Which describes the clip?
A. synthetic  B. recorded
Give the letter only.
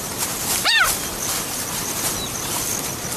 B